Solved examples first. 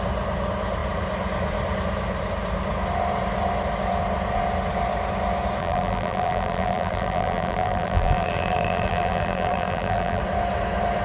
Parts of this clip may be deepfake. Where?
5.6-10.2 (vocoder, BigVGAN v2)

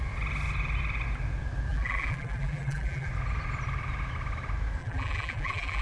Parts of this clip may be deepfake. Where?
1.7-3.1 (vocoder, BigVGAN v2); 4.8-5.8

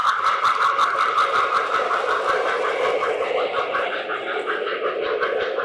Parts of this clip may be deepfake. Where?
none

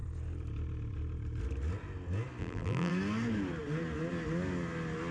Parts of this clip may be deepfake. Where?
2.4-2.9 (vocoder, BigVGAN v2)

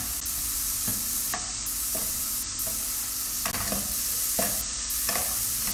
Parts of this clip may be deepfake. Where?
0.0-0.9 (vocoder, BigVGAN v2); 4.3-5.7